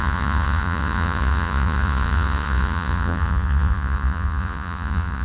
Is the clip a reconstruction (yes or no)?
yes